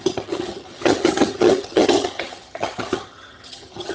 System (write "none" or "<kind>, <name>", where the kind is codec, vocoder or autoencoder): vocoder, HiFi-GAN